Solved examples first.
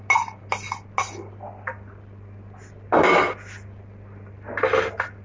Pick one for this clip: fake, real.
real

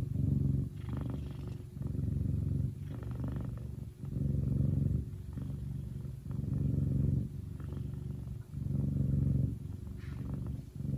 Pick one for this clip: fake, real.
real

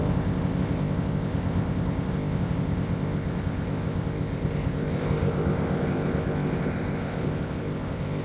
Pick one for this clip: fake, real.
fake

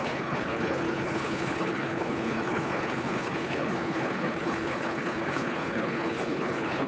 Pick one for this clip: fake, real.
fake